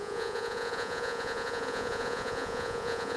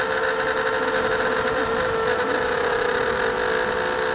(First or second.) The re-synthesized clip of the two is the first